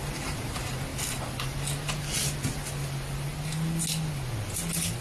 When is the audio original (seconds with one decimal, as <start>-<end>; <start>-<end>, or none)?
0.0-5.0